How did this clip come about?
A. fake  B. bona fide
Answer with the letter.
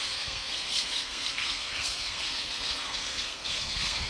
A